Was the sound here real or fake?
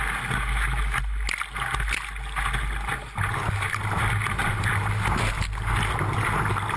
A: real